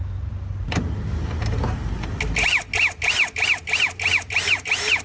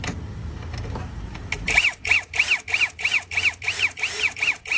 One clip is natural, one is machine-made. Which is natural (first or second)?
first